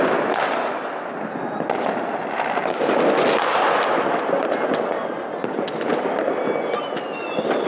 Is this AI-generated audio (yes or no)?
no